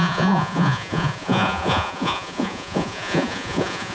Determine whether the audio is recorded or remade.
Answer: remade